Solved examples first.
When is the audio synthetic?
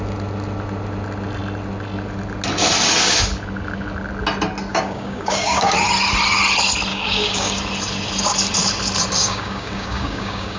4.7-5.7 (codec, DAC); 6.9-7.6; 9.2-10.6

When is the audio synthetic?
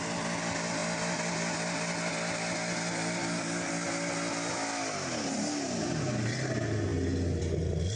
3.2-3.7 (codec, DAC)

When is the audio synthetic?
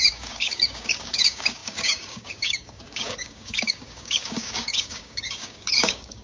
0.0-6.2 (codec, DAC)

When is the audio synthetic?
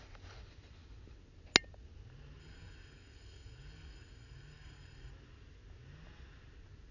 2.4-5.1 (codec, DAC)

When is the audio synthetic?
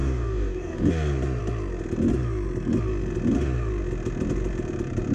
0.0-0.9 (codec, DAC)